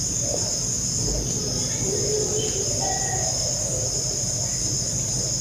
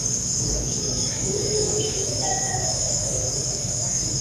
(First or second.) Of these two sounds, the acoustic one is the first